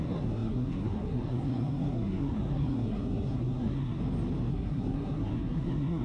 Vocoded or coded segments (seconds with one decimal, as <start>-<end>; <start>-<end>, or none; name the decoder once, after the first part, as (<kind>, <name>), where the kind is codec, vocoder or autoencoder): 0.0-4.0 (codec, SNAC); 4.5-6.0